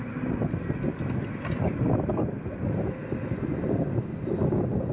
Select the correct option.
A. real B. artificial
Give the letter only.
A